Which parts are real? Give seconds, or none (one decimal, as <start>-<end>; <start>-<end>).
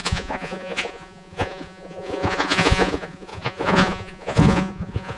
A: none